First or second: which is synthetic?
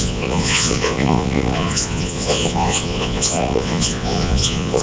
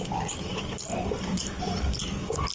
first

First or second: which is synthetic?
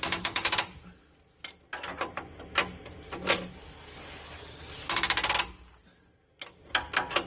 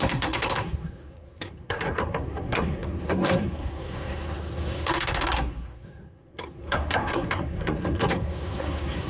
second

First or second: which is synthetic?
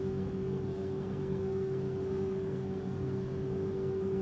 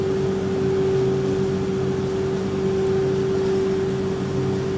first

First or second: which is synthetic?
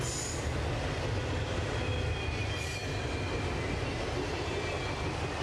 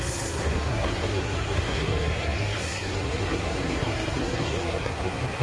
second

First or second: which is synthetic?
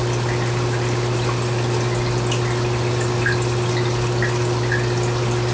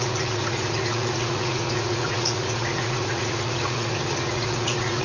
second